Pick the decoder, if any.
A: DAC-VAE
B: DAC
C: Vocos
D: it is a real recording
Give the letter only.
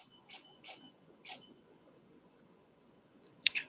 C